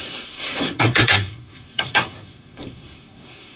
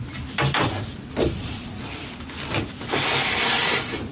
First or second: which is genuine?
second